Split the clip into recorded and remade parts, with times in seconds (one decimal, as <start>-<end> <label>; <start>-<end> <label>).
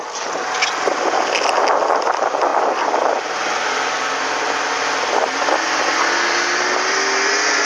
0.0-7.6 recorded